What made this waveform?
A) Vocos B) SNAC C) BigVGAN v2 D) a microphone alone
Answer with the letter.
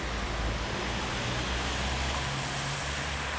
D